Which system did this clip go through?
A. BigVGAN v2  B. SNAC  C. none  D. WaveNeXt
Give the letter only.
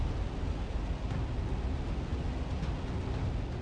C